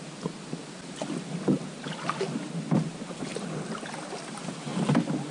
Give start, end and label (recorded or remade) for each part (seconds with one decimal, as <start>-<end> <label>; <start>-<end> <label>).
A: 0.0-5.3 recorded